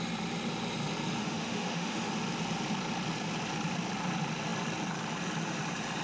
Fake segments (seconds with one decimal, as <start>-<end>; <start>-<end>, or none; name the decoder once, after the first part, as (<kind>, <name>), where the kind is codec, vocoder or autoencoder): 1.2-2.1 (autoencoder, DAC-VAE)

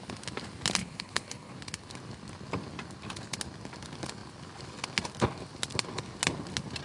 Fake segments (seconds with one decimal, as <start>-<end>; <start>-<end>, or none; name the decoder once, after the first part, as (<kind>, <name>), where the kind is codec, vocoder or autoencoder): 0.8-1.5 (codec, HILCodec)

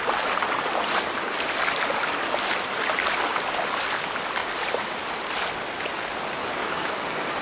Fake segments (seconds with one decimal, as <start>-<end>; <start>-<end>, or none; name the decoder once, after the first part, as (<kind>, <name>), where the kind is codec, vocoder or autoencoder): 6.6-7.4 (codec, DAC)

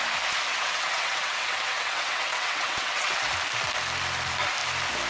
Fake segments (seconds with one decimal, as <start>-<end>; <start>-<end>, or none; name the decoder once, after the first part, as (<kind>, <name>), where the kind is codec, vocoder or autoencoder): 0.5-3.3 (vocoder, WaveNeXt)

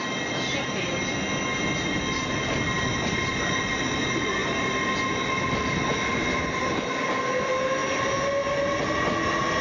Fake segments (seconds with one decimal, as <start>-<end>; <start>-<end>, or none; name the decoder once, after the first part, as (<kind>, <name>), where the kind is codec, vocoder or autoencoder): 2.9-3.6 (vocoder, BigVGAN v2)

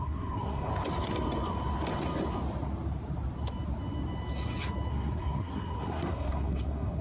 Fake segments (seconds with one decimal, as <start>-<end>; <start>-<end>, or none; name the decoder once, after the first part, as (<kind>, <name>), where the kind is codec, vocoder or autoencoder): 0.0-0.7 (codec, SNAC); 4.9-7.0

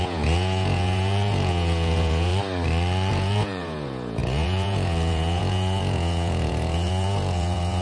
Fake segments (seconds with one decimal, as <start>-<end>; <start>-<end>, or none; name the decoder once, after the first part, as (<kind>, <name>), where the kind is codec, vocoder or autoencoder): 0.0-2.3 (vocoder, Vocos); 3.1-7.8